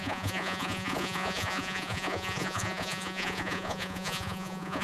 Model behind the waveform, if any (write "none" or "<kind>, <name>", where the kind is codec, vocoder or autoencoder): vocoder, Vocos